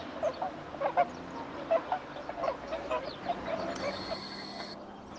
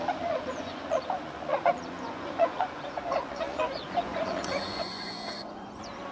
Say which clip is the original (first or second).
first